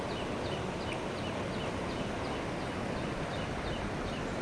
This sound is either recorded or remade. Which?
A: recorded